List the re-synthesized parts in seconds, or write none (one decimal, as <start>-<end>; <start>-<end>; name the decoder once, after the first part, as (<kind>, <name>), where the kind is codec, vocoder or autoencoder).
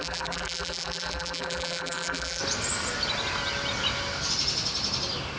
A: 0.0-2.4 (vocoder, BigVGAN v2)